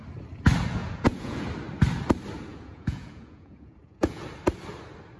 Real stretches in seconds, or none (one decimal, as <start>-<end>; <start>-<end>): 0.0-0.8; 1.4-2.5; 4.2-5.2